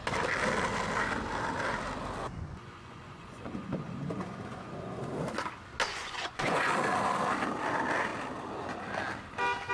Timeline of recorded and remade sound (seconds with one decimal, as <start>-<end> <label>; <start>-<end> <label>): 0.0-2.2 recorded; 2.2-5.0 remade; 5.0-5.9 recorded; 5.9-6.7 remade; 6.7-9.7 recorded